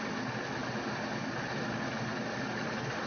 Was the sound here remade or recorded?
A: recorded